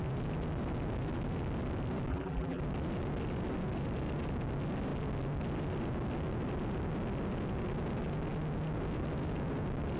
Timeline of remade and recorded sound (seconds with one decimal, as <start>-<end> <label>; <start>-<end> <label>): 0.0-2.1 recorded; 2.1-2.6 remade; 2.6-10.0 recorded